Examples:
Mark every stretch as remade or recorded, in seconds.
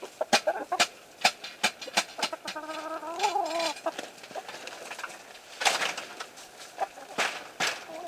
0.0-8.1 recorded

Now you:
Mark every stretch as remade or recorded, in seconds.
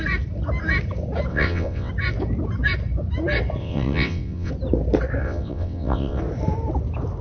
0.0-1.3 recorded; 1.3-1.9 remade; 1.9-3.6 recorded; 3.6-4.5 remade; 4.5-5.2 recorded; 5.2-6.2 remade; 6.2-7.2 recorded